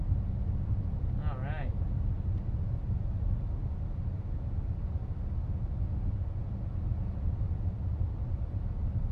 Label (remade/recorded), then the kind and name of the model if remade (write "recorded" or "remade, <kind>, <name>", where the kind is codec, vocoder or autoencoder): recorded